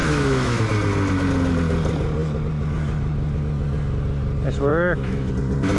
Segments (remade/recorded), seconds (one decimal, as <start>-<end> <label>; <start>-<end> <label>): 0.0-0.6 remade; 0.6-4.7 recorded; 4.7-5.3 remade; 5.3-5.8 recorded